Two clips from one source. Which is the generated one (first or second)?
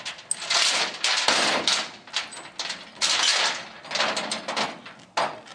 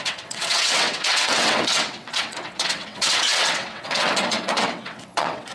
second